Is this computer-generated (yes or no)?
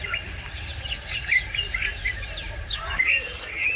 no